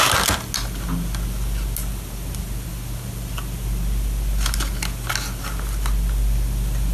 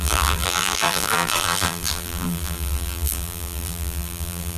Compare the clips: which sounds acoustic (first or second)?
first